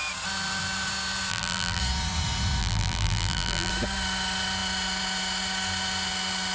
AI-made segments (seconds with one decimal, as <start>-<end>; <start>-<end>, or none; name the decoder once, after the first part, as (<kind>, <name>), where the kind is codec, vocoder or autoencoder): 1.3-1.8 (vocoder, BigVGAN v2); 2.6-3.7